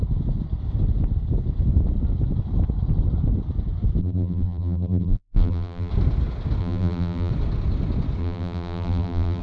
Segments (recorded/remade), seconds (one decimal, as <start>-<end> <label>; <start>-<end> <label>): 0.0-4.0 recorded; 4.0-5.9 remade; 5.9-6.6 recorded; 6.6-7.3 remade; 7.3-8.2 recorded; 8.2-9.4 remade